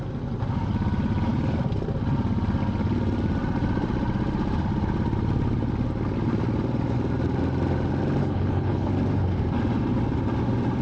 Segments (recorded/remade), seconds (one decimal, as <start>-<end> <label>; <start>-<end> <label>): 0.0-8.2 recorded; 8.2-8.9 remade; 8.9-10.8 recorded

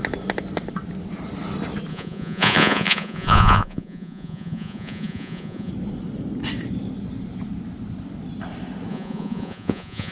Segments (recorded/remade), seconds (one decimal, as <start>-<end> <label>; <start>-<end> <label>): 0.0-1.9 recorded; 1.9-5.7 remade; 5.7-8.9 recorded; 8.9-10.1 remade

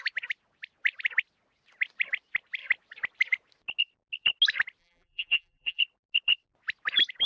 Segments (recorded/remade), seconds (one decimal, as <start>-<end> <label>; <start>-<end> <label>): 0.0-4.8 recorded; 4.8-5.8 remade; 5.8-7.3 recorded

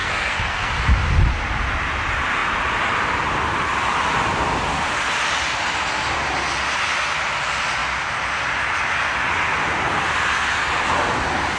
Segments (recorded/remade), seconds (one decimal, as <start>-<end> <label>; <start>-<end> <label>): 0.0-0.7 remade; 0.7-11.6 recorded